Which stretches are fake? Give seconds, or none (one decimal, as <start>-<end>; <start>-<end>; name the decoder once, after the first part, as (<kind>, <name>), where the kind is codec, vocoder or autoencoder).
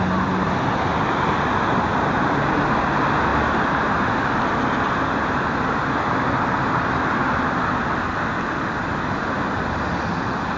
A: none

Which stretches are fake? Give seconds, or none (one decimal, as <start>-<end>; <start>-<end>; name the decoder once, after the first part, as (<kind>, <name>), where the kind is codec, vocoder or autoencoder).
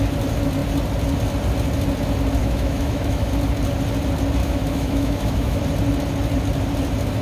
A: 2.4-3.3 (autoencoder, DAC-VAE); 4.4-5.6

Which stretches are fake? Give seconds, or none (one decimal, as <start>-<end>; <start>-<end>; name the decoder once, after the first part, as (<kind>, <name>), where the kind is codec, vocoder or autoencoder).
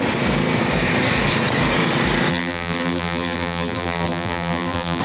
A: 2.3-5.0 (vocoder, BigVGAN v2)